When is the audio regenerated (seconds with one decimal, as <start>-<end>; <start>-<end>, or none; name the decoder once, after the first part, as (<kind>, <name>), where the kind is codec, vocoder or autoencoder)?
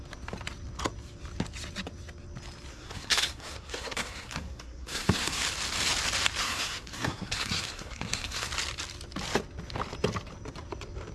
2.7-5.4 (codec, SNAC); 6.4-8.5